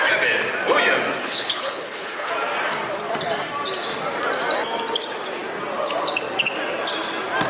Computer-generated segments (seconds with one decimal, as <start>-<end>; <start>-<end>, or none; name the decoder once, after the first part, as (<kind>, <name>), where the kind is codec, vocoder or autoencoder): 1.2-2.3 (codec, HILCodec)